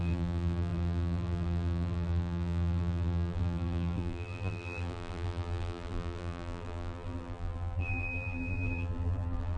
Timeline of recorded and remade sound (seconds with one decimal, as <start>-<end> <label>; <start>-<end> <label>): 0.0-9.6 remade